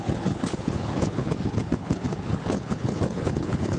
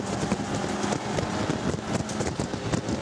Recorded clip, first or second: second